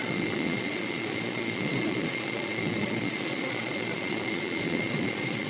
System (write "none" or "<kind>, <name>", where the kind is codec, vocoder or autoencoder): vocoder, Vocos